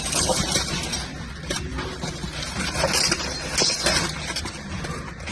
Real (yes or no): yes